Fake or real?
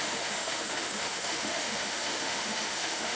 fake